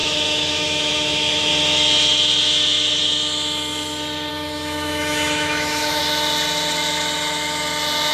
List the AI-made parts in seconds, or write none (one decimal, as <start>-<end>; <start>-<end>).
0.0-1.5; 4.3-6.0